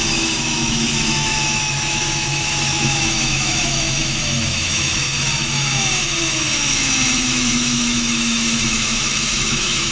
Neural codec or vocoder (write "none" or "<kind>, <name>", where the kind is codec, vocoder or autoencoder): autoencoder, DAC-VAE